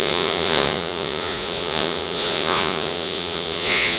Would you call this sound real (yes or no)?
no